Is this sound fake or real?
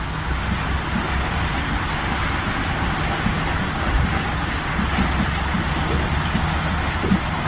real